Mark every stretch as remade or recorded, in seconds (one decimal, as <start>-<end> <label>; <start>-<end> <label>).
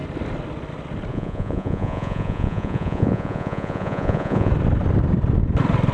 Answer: 0.0-1.1 recorded; 1.1-4.5 remade; 4.5-5.9 recorded